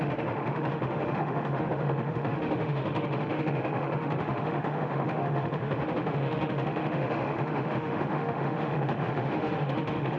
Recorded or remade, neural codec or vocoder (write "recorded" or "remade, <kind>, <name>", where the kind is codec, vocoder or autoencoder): remade, autoencoder, DAC-VAE